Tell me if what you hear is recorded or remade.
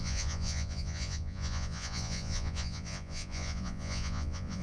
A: remade